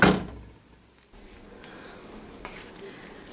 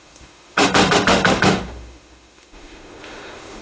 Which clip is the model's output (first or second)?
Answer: second